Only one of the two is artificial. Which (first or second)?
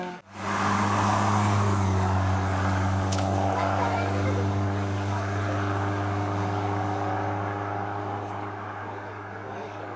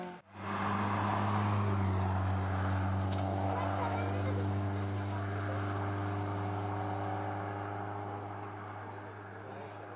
first